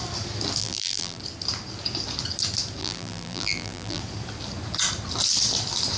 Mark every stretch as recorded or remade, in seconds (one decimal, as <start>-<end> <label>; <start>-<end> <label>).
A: 0.0-0.6 recorded; 0.6-1.2 remade; 1.2-2.8 recorded; 2.8-4.0 remade; 4.0-6.0 recorded